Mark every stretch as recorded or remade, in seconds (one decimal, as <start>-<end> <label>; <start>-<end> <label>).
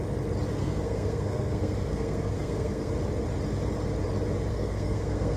0.0-0.6 recorded; 0.6-2.9 remade; 2.9-4.5 recorded; 4.5-5.4 remade